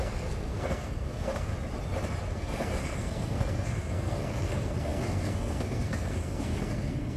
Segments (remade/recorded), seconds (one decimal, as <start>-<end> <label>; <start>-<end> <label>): 0.0-1.5 remade; 1.5-2.3 recorded; 2.3-7.2 remade